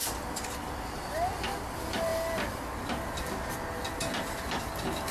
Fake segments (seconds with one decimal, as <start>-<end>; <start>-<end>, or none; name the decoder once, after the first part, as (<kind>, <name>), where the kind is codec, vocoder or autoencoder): none